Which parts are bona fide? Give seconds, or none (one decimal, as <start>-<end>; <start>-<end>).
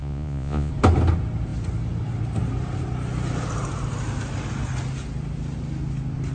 0.7-6.3